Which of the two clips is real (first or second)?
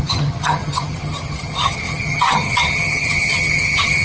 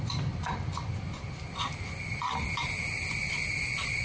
second